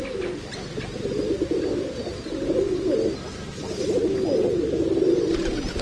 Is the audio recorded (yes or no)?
yes